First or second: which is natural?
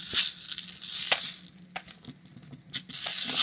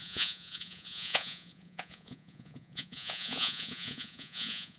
first